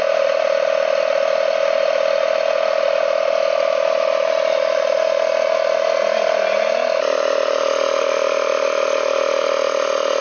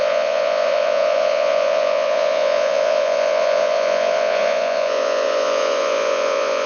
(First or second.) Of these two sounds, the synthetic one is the second